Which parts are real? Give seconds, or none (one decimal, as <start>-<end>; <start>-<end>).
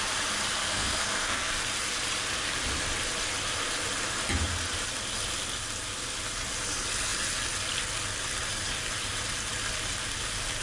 0.0-0.6; 1.5-10.6